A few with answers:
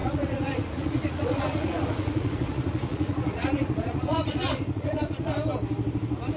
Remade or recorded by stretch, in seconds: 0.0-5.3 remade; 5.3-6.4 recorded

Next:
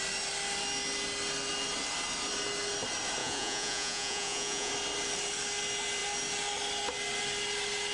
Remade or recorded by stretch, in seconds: 0.0-3.2 recorded; 3.2-4.7 remade; 4.7-7.9 recorded